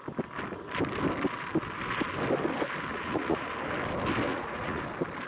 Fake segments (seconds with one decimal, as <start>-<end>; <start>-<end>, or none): 2.9-3.5; 4.3-4.8